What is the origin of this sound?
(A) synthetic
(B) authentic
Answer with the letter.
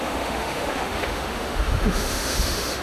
A